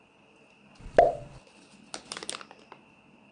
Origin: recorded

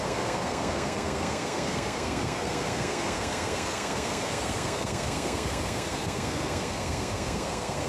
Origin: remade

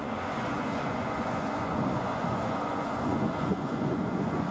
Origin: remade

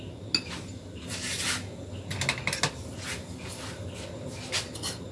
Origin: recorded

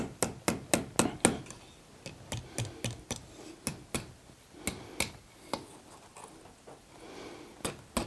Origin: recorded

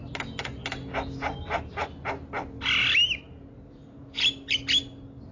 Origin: recorded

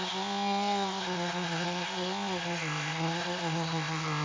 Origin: remade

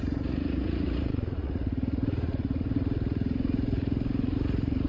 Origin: remade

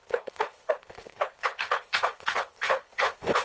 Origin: remade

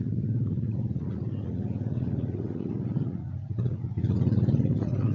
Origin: remade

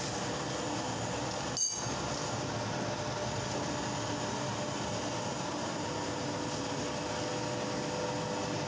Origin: recorded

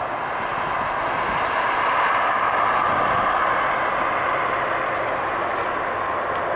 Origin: recorded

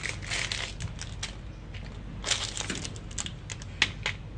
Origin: recorded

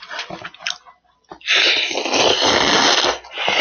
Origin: recorded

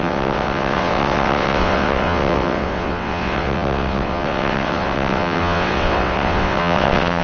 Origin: remade